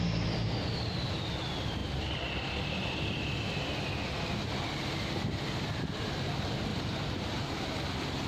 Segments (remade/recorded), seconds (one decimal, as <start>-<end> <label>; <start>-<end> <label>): 0.0-1.8 recorded; 1.8-3.0 remade; 3.0-6.7 recorded; 6.7-7.3 remade; 7.3-8.3 recorded